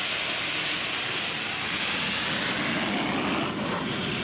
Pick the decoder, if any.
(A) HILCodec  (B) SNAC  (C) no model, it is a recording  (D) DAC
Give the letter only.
C